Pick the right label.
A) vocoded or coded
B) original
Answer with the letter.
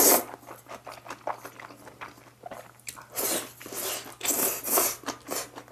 B